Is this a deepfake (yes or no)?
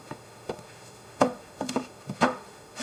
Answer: yes